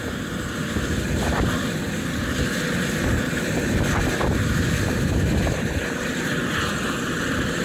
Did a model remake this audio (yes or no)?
no